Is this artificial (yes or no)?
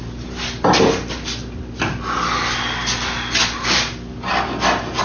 no